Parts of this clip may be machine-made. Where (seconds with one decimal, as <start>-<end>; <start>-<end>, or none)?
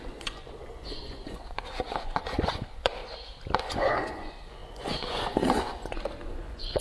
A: 0.0-3.0; 3.6-6.8